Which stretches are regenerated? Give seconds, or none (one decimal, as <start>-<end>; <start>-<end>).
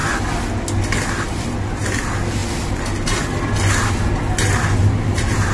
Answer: none